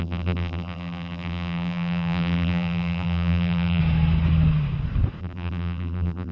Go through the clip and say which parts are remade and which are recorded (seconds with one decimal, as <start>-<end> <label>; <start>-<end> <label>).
0.0-3.8 remade; 3.8-5.2 recorded; 5.2-6.3 remade